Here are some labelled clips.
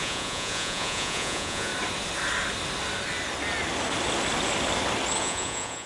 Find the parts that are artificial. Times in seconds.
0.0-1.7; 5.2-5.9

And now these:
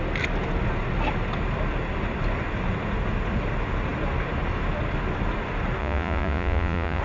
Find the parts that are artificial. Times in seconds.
5.8-7.0

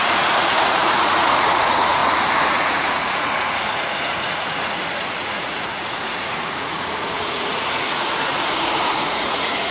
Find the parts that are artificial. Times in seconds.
0.0-9.7